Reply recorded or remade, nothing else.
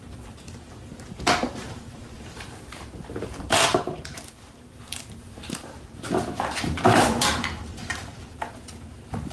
remade